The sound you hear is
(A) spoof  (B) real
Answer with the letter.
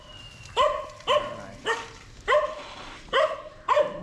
A